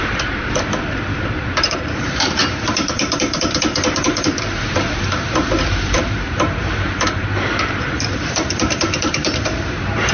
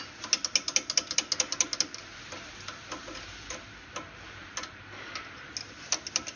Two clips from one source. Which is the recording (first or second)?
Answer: second